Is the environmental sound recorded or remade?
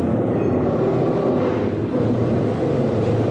recorded